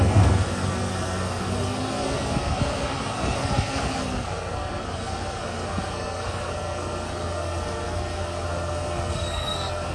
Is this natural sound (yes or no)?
no